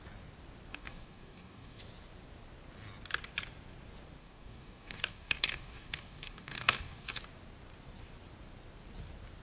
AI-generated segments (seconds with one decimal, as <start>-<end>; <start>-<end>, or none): 0.7-1.8; 4.2-7.2